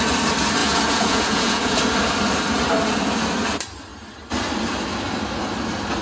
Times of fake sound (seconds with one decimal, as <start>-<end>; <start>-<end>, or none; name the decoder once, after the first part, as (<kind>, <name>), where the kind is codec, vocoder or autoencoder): 0.6-1.8 (vocoder, Vocos)